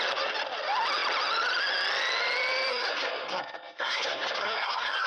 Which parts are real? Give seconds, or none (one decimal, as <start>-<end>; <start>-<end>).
0.0-2.7